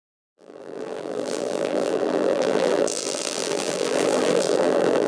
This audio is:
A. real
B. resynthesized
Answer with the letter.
B